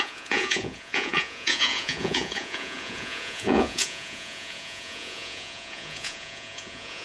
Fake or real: fake